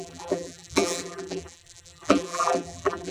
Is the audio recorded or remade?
remade